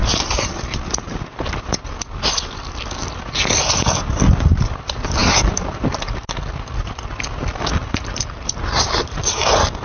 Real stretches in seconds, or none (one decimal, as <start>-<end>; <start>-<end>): 0.0-9.8